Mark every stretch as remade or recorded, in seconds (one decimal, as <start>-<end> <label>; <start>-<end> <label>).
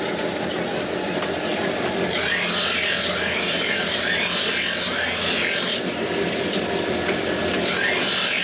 0.0-8.4 recorded